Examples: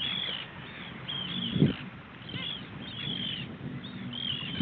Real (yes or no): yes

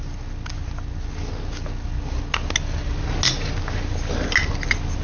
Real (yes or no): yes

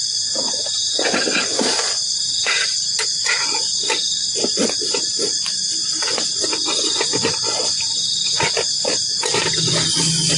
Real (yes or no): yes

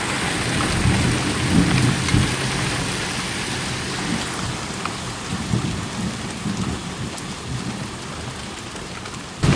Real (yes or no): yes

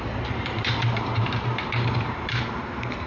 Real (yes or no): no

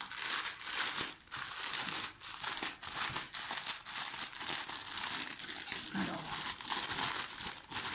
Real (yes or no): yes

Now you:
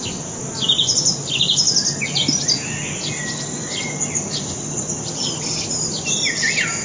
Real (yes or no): yes